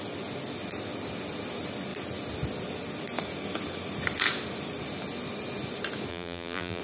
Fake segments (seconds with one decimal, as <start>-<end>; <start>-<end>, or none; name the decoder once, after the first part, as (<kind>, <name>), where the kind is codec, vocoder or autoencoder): 6.1-6.8 (vocoder, BigVGAN v2)